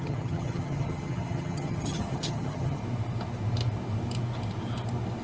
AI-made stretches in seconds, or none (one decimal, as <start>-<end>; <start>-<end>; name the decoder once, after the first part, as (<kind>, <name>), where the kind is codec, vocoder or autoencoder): 0.0-2.8 (vocoder, HiFi-GAN)